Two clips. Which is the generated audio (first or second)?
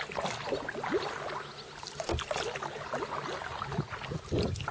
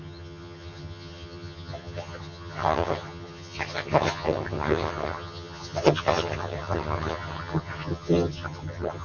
second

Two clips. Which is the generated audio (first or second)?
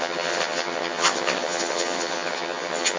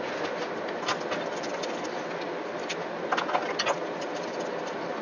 first